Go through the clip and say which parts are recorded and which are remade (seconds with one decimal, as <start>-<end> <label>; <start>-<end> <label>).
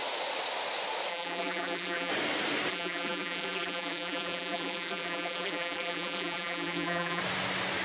0.0-1.1 recorded; 1.1-2.1 remade; 2.1-2.7 recorded; 2.7-7.2 remade; 7.2-7.8 recorded